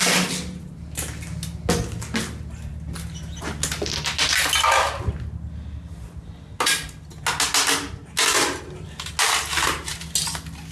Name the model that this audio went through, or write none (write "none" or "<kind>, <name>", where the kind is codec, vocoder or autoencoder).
none